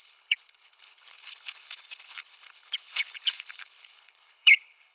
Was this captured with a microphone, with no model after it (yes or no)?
no